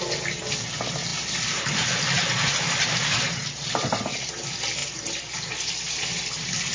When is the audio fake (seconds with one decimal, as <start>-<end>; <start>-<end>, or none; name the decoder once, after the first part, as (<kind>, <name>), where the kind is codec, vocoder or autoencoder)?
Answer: 1.1-4.3 (vocoder, BigVGAN v2)